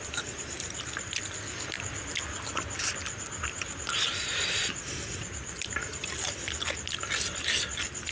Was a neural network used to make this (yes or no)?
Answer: no